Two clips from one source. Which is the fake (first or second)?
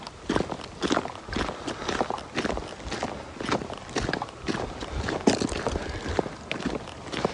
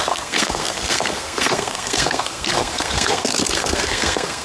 second